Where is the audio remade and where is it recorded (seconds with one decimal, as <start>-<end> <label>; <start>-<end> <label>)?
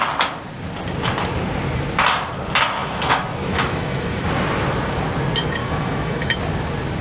0.0-2.8 recorded; 2.8-4.3 remade; 4.3-5.6 recorded; 5.6-6.4 remade; 6.4-7.0 recorded